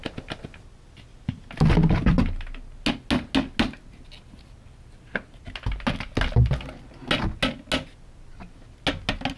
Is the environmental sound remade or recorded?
recorded